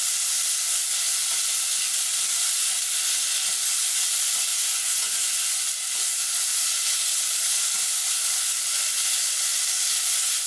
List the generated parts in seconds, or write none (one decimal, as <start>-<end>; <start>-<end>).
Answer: 4.5-5.3